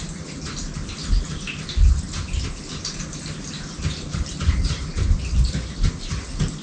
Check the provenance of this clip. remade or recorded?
recorded